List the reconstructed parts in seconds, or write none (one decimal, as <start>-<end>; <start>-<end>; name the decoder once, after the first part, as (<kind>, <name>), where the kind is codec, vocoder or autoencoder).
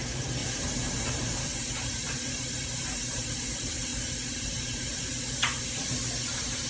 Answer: 0.0-3.9 (vocoder, BigVGAN v2); 4.6-5.1